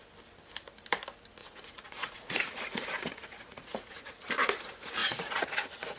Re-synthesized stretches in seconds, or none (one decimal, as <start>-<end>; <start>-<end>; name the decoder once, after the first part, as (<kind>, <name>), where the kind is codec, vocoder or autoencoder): 1.4-4.2 (vocoder, Vocos); 5.0-6.0